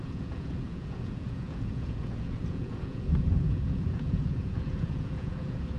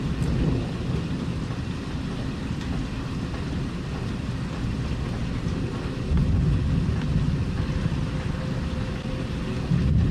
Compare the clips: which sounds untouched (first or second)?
second